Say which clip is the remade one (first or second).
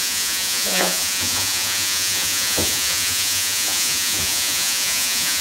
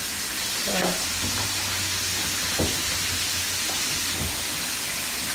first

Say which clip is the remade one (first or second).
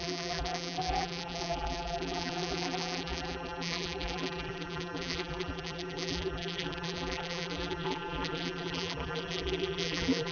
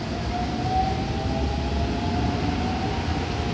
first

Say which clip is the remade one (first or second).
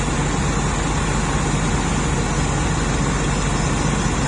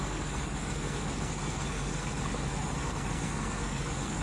second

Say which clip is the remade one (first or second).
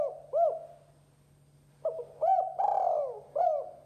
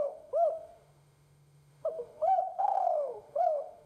second